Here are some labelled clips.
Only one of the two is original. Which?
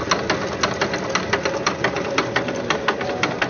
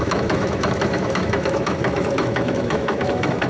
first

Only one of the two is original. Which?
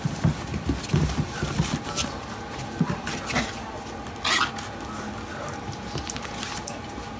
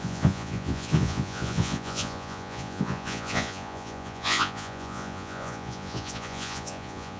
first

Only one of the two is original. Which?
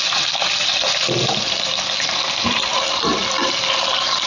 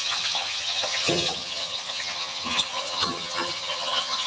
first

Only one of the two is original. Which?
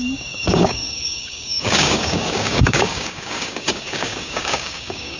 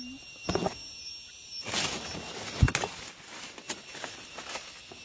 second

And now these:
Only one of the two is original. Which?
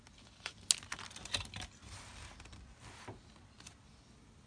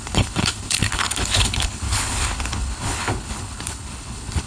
first